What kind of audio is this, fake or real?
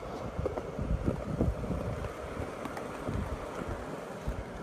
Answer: real